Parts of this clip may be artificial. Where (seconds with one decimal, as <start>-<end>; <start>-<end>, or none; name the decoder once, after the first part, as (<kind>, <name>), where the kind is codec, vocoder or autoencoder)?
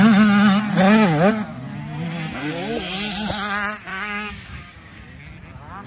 3.9-5.0 (codec, DAC)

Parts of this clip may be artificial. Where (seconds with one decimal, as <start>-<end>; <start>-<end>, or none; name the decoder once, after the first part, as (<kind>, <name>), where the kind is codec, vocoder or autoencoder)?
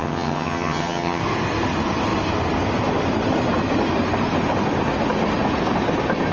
0.0-1.2 (vocoder, HiFi-GAN)